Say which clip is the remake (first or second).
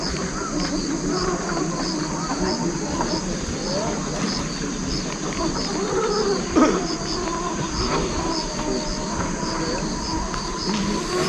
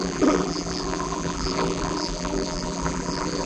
second